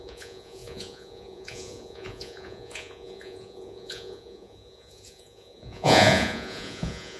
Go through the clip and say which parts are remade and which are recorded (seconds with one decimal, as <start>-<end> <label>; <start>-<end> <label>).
0.0-7.2 remade